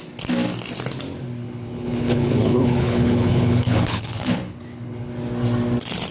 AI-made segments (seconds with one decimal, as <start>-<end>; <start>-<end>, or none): 1.4-5.1